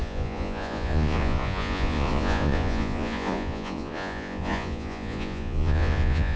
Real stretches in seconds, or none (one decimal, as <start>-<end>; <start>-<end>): none